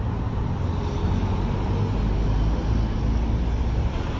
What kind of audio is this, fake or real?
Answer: real